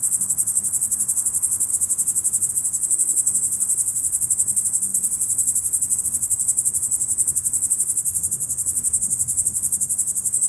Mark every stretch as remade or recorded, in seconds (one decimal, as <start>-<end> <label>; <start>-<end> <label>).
0.0-1.7 remade; 1.7-2.5 recorded; 2.5-10.5 remade